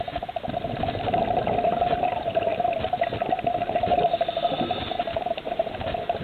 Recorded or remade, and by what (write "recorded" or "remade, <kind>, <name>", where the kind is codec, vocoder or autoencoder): recorded